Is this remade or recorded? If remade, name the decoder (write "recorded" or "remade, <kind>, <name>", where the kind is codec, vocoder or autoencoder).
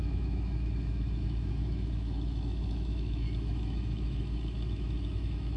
remade, autoencoder, DAC-VAE